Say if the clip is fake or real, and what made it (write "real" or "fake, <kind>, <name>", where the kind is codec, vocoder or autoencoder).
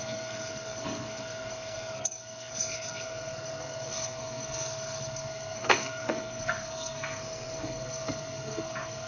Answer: fake, codec, SNAC